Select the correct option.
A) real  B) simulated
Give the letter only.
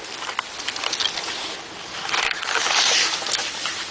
A